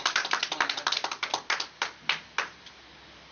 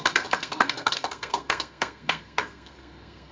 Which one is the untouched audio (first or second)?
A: first